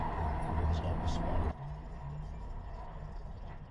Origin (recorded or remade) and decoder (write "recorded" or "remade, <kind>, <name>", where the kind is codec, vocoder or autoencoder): recorded